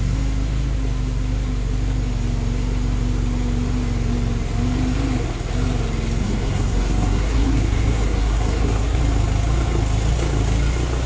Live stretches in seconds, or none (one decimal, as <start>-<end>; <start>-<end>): 0.0-6.2; 9.0-11.1